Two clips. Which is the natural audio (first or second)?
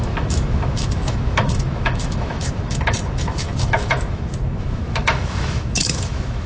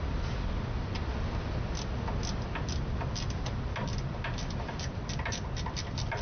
second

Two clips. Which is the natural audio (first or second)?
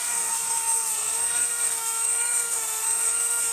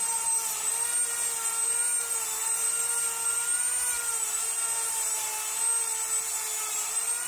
second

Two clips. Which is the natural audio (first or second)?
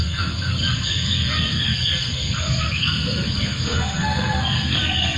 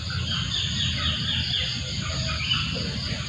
second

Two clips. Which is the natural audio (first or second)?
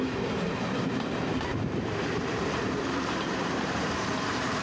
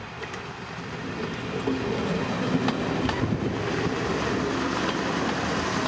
second